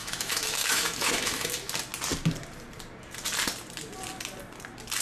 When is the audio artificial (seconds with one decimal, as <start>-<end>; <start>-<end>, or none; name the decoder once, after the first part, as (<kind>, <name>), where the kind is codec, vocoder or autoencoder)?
0.0-1.5 (autoencoder, DAC-VAE)